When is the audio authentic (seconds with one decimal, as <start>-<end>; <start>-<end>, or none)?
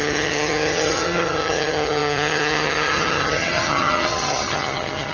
none